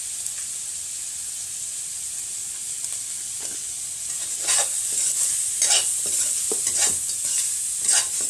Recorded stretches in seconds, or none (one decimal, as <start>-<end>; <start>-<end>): 0.0-8.3